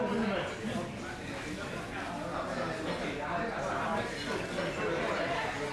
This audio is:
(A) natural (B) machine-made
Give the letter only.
A